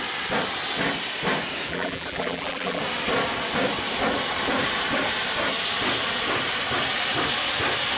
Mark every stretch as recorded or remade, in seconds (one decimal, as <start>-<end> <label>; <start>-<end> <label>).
0.0-1.7 recorded; 1.7-2.8 remade; 2.8-8.0 recorded